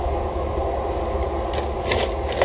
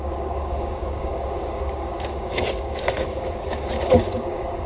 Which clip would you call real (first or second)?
first